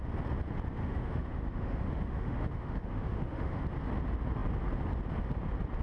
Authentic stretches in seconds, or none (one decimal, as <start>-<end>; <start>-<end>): 0.0-0.8; 3.6-5.8